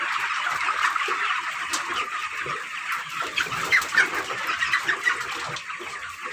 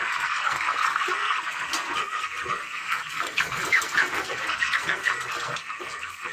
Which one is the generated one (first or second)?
second